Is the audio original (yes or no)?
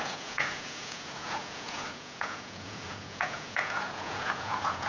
no